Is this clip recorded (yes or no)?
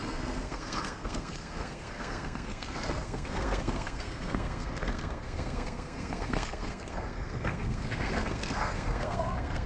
no